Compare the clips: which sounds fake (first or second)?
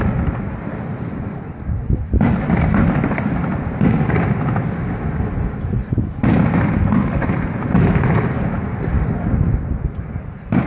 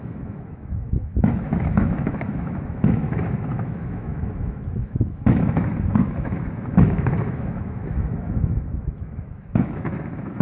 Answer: second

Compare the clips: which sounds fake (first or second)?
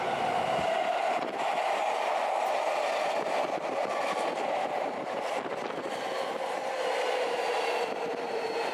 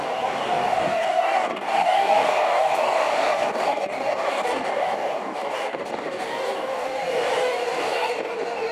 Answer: second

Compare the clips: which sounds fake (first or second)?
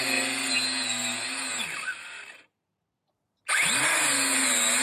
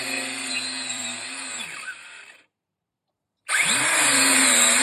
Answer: second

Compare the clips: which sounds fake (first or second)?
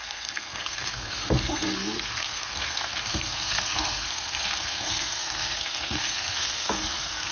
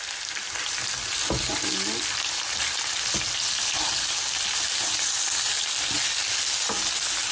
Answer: first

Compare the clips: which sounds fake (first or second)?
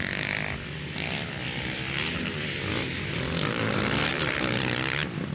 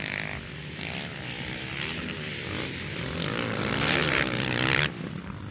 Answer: second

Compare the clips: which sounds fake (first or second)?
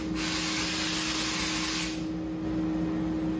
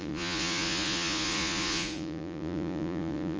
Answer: second